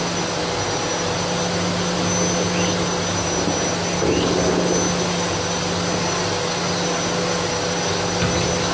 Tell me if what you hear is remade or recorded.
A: recorded